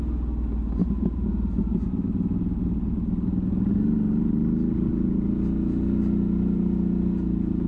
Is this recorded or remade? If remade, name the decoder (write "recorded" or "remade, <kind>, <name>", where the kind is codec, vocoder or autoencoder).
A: recorded